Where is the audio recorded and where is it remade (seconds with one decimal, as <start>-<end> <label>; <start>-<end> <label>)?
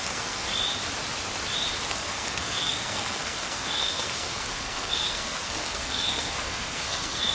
0.0-0.5 remade; 0.5-1.9 recorded; 1.9-7.3 remade